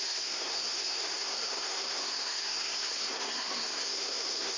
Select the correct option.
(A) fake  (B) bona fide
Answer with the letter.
A